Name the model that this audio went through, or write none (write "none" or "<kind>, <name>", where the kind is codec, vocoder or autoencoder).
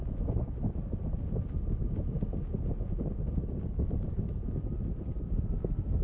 none